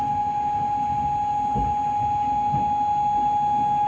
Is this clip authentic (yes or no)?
yes